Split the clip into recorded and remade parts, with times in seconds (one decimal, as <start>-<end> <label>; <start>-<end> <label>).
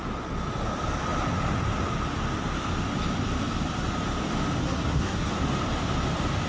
0.0-4.6 recorded; 4.6-5.3 remade; 5.3-6.5 recorded